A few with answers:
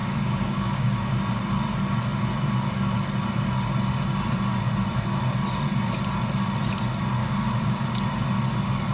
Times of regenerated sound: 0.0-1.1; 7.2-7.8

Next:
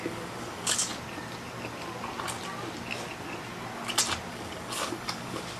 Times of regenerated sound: 0.0-0.9; 4.3-5.6

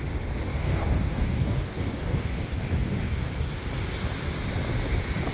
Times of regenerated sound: 0.5-3.3

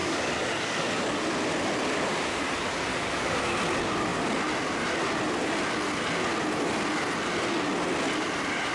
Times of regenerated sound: 0.0-1.2; 2.9-3.4

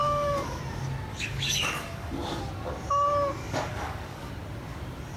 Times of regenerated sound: 0.0-0.6; 1.1-2.4; 3.4-4.3